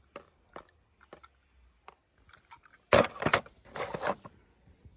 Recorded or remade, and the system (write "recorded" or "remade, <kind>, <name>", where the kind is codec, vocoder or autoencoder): recorded